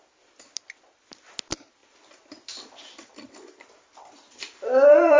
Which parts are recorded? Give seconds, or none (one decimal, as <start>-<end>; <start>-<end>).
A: 0.0-1.8